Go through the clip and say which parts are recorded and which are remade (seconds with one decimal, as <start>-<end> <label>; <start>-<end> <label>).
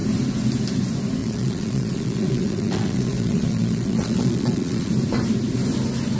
0.0-1.2 recorded; 1.2-4.9 remade; 4.9-6.2 recorded